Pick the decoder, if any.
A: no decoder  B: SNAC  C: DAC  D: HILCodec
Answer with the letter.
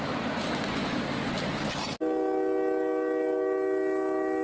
A